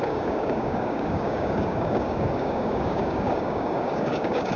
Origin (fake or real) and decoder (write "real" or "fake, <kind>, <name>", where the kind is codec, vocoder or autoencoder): fake, codec, DAC